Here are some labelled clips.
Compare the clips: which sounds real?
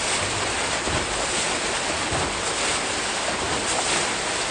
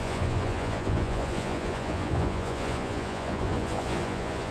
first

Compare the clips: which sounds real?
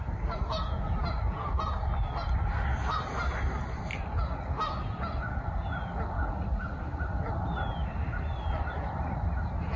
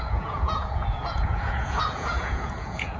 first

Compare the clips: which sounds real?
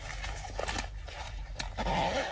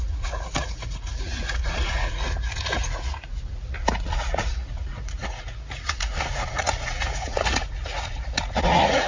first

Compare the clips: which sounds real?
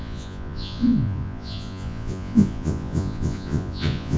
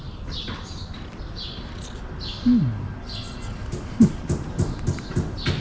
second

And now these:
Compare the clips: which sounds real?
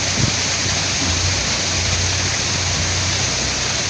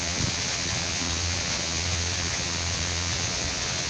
first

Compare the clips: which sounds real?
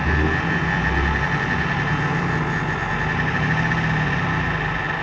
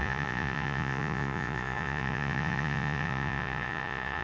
first